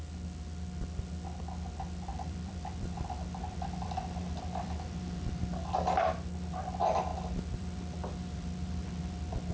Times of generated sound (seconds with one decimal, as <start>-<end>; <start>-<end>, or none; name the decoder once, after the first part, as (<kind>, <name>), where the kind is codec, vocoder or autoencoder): 2.1-5.4 (vocoder, BigVGAN v2); 7.1-9.5